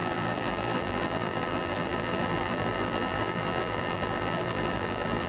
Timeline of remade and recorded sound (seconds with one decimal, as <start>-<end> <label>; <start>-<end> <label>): 0.0-5.3 remade